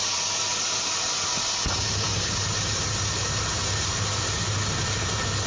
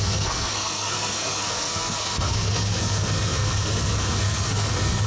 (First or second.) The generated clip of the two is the second